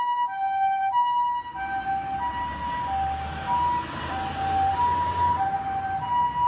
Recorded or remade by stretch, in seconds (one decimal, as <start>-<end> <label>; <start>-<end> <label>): 0.0-6.5 recorded